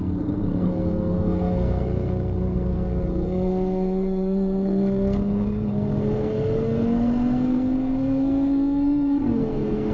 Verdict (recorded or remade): remade